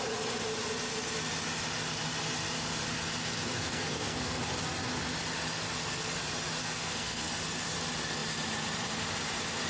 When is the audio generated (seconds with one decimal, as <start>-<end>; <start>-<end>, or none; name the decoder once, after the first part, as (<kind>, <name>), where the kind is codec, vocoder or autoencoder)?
3.5-4.4 (codec, SNAC); 6.6-7.3